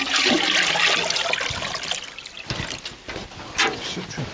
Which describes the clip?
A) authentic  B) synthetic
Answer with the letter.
A